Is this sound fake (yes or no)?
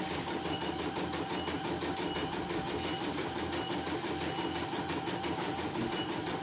no